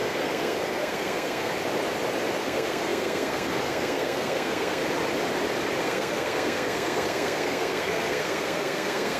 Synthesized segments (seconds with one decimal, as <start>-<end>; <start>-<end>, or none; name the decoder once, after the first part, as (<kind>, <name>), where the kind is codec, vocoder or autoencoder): 0.0-1.5 (codec, SNAC); 2.4-4.8; 5.8-9.2